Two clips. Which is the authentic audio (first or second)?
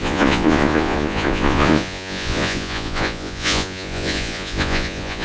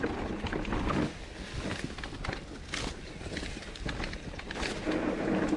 second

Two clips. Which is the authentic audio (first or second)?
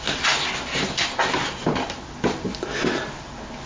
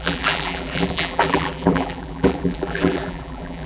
first